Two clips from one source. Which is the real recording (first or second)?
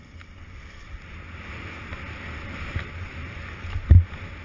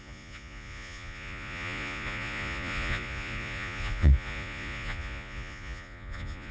first